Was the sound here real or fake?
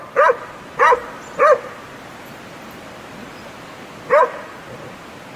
real